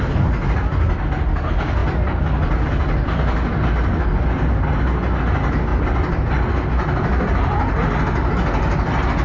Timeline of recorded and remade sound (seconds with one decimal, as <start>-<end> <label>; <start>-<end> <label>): 0.0-1.8 recorded; 1.8-2.7 remade; 2.7-5.7 recorded; 5.7-6.5 remade; 6.5-9.2 recorded